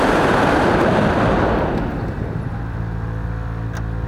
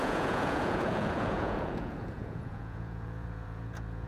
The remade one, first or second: second